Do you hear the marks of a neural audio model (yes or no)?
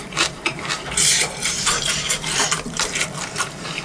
yes